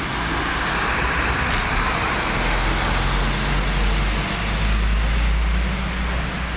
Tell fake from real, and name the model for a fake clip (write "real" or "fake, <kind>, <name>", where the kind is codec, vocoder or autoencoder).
real